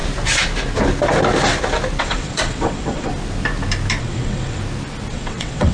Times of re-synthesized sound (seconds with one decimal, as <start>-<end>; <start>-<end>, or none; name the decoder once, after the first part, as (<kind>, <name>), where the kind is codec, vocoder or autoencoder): 2.0-3.1 (vocoder, WaveNeXt); 4.0-4.6; 5.1-5.7